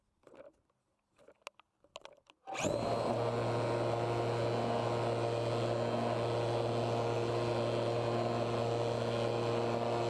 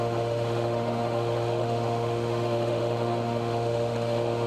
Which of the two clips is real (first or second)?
first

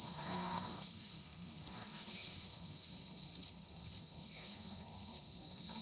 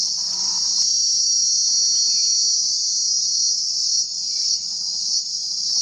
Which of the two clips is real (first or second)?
second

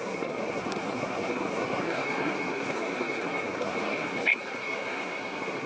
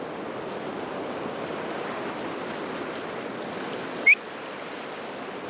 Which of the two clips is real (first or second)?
second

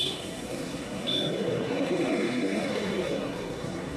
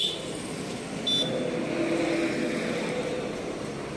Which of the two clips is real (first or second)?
second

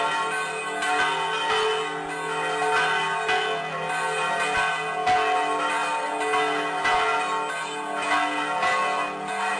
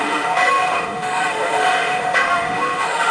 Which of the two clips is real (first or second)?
first